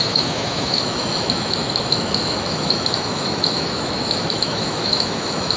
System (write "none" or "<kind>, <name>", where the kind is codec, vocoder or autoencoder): autoencoder, DAC-VAE